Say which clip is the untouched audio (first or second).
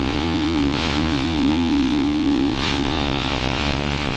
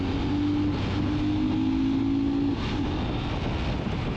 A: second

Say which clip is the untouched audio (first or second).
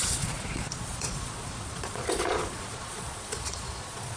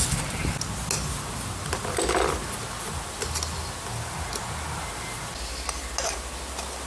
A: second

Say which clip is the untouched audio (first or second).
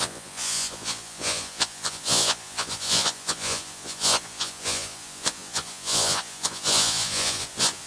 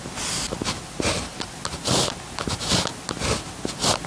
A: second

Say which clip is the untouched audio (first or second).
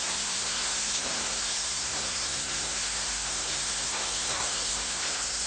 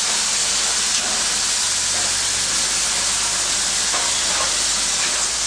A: second